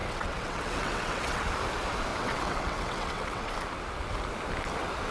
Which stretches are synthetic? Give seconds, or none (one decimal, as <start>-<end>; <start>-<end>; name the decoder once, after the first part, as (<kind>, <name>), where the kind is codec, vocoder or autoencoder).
0.0-1.5 (vocoder, WaveNeXt); 2.1-3.5